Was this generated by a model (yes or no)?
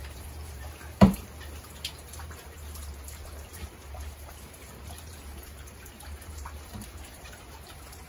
yes